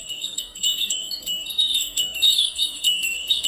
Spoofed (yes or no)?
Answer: yes